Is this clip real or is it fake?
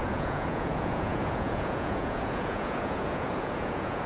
fake